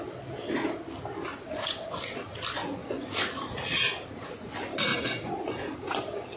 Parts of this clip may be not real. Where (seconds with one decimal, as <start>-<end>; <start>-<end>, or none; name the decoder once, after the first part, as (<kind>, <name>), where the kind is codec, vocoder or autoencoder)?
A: 1.3-2.0 (vocoder, Vocos); 2.8-4.5; 4.9-6.0